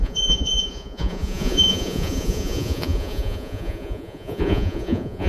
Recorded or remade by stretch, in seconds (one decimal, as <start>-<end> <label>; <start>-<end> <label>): 0.0-5.3 remade